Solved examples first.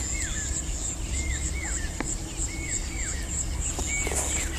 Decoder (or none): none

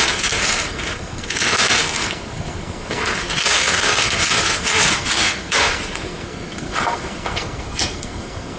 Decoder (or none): codec, SNAC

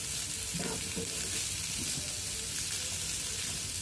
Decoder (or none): none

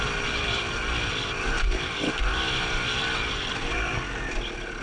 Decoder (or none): none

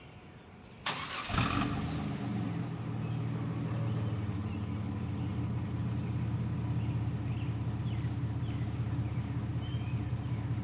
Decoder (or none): none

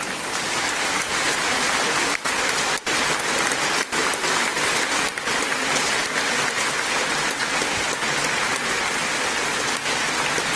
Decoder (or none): none